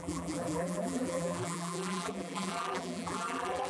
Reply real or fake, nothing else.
fake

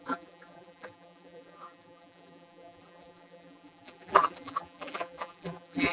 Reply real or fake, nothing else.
fake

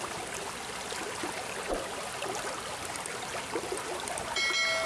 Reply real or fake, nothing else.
real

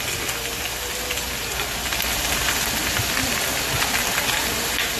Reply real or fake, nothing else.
real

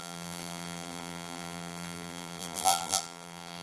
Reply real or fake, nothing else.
fake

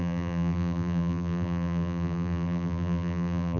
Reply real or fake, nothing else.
fake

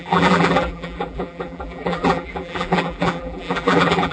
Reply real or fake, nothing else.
fake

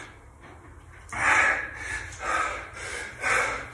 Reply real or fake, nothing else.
real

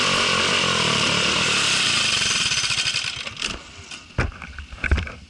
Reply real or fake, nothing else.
fake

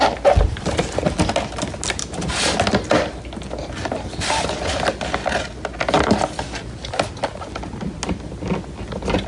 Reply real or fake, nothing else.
real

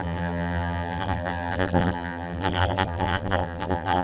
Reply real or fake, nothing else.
fake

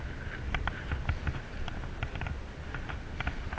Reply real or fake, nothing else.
real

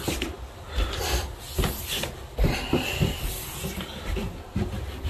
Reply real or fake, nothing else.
real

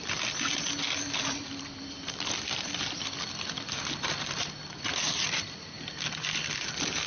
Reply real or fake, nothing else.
fake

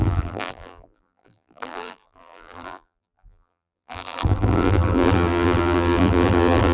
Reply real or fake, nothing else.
fake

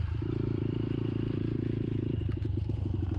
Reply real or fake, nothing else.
fake